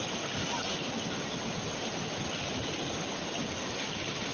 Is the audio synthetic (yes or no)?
no